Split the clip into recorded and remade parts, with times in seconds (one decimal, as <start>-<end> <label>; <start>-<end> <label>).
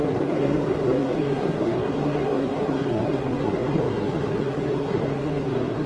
0.0-5.9 remade